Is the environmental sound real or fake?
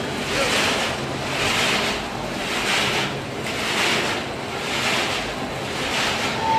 real